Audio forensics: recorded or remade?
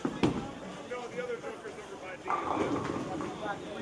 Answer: recorded